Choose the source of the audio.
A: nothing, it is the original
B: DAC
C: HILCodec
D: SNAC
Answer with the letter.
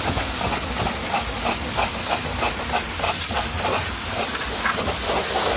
A